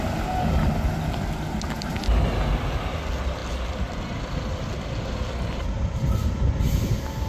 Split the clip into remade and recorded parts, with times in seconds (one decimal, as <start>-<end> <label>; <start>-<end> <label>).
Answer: 0.0-7.3 recorded